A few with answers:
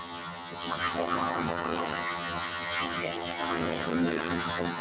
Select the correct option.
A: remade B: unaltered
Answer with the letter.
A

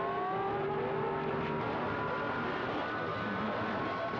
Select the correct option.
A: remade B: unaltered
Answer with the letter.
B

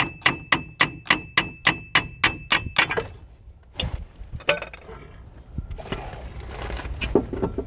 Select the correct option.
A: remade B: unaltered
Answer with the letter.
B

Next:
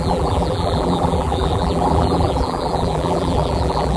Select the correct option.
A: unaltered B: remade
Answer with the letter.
B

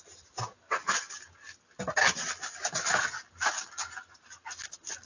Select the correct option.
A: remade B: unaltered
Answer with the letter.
B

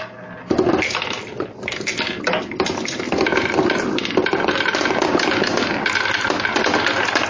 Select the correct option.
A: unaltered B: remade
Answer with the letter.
A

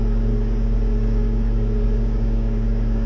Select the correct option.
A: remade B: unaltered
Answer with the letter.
A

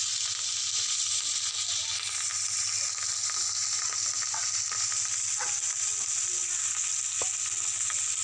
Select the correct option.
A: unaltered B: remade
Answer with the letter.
A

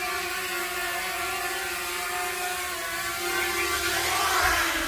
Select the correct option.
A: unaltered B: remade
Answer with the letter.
A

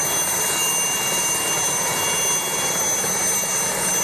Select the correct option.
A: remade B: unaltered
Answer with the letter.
B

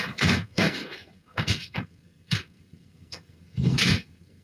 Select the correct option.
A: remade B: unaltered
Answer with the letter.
A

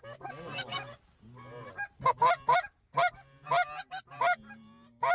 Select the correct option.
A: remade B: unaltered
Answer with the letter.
B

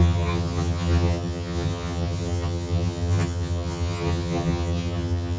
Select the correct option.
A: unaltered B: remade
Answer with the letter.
B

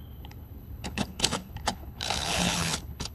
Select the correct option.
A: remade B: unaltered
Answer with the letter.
A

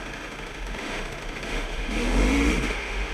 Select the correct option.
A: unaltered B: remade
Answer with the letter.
B